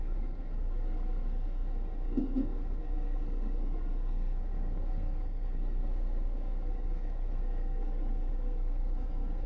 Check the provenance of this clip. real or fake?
fake